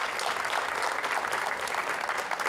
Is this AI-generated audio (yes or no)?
no